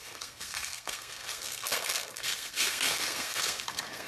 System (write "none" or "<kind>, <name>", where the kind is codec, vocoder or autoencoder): codec, SNAC